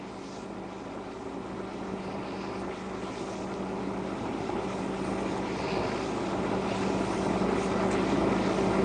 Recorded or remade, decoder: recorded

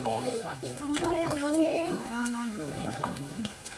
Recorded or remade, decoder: remade, codec, SNAC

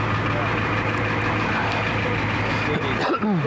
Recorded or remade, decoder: recorded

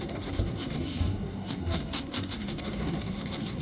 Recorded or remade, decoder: remade, codec, SNAC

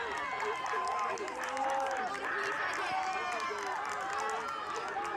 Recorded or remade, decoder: recorded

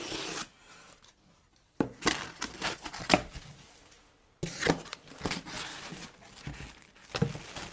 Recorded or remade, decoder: recorded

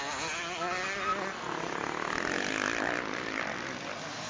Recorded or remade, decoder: recorded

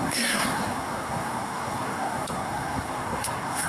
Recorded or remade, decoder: remade, codec, SNAC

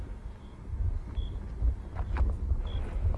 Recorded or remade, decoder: recorded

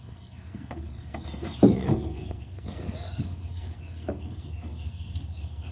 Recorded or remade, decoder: remade, codec, SNAC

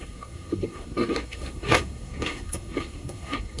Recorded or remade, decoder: remade, codec, SNAC